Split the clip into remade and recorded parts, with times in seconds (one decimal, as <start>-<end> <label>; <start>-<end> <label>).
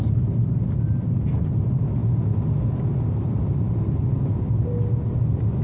0.0-5.6 recorded